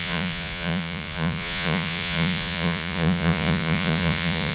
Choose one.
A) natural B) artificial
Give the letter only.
B